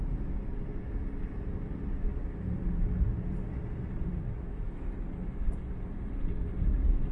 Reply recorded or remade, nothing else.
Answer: recorded